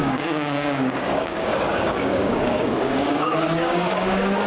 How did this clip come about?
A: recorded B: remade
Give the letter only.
B